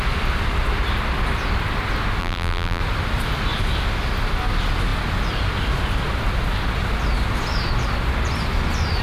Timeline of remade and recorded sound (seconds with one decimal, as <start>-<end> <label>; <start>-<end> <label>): 0.0-2.2 recorded; 2.2-2.8 remade; 2.8-9.0 recorded